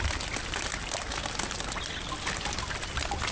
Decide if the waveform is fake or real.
real